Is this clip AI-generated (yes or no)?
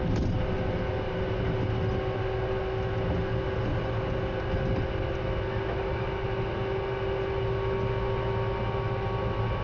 no